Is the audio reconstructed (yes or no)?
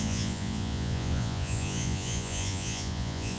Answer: yes